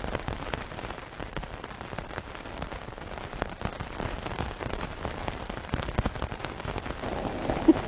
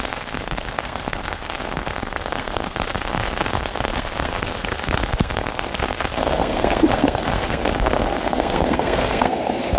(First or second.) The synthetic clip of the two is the second